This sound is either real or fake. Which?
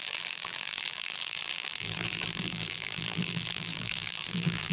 fake